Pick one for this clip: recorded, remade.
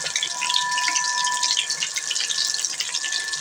recorded